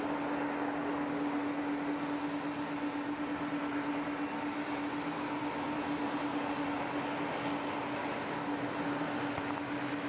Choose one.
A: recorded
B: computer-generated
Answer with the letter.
A